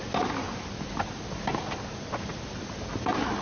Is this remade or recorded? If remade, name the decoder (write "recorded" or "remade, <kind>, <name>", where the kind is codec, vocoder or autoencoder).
recorded